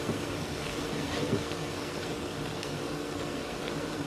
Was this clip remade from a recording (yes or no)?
yes